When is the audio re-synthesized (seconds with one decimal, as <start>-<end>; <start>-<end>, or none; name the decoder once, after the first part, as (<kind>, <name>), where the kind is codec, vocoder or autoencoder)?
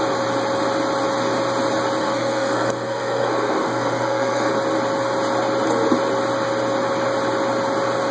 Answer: 2.0-4.5 (codec, SNAC)